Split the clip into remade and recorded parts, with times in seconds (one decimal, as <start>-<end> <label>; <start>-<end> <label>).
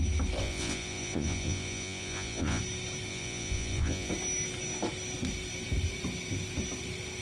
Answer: 0.0-0.4 recorded; 0.4-2.6 remade; 2.6-3.1 recorded; 3.1-4.1 remade; 4.1-7.2 recorded